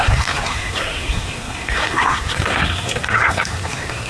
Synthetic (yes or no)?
yes